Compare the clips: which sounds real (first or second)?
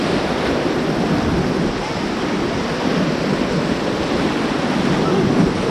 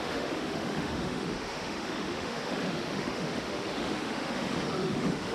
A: first